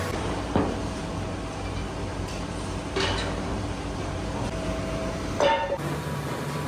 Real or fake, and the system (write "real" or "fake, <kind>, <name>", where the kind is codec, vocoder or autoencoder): fake, vocoder, BigVGAN v2